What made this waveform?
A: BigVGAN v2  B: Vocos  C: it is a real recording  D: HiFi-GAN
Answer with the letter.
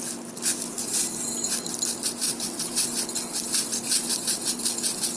A